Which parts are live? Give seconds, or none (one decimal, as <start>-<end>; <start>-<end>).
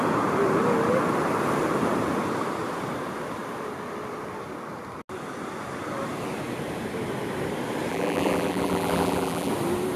0.0-7.9; 9.5-10.0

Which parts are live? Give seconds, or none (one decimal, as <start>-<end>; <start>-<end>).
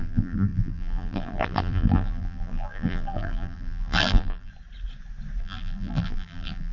4.5-5.4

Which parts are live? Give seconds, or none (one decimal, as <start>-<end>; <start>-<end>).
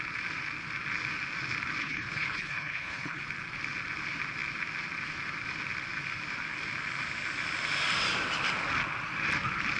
0.0-1.8; 3.2-9.8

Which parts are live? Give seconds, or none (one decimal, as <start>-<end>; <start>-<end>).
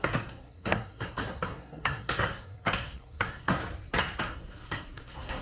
3.6-4.2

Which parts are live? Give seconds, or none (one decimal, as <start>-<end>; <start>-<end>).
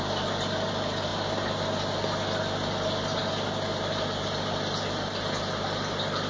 0.0-6.3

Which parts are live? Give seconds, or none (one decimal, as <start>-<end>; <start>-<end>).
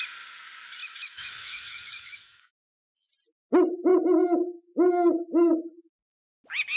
0.0-0.8; 3.1-6.8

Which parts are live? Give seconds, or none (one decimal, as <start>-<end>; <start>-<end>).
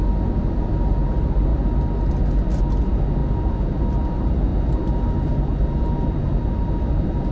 0.0-7.3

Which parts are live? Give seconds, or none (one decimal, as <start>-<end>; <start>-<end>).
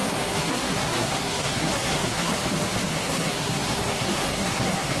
2.3-2.9